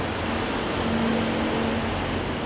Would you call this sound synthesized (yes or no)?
no